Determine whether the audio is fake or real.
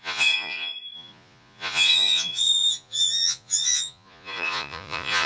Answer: fake